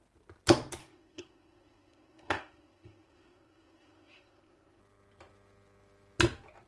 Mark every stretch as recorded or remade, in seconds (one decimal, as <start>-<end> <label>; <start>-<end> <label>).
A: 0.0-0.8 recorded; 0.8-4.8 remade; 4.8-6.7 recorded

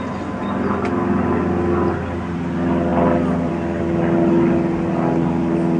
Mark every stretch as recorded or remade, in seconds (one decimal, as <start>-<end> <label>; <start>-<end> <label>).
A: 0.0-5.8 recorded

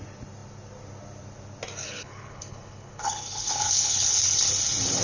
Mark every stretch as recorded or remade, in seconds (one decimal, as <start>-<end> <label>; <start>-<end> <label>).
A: 0.0-1.8 recorded; 1.8-4.5 remade; 4.5-5.0 recorded